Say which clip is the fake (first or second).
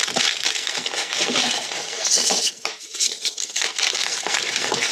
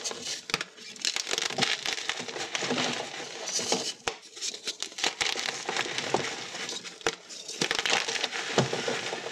first